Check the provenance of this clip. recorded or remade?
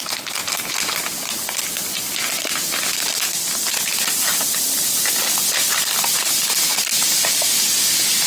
recorded